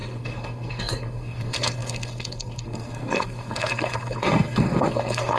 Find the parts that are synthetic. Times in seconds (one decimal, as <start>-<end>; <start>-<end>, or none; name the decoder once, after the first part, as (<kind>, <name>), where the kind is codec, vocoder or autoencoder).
0.0-5.4 (codec, SNAC)